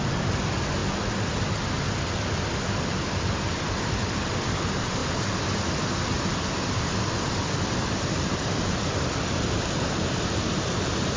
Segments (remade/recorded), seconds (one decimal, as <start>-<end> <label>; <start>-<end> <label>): 0.0-0.8 remade; 0.8-2.7 recorded; 2.7-5.0 remade; 5.0-7.0 recorded; 7.0-11.2 remade